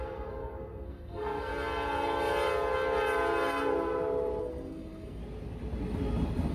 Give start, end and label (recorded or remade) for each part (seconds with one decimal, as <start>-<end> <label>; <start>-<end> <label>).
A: 0.0-1.5 remade; 1.5-4.4 recorded; 4.4-5.2 remade; 5.2-6.5 recorded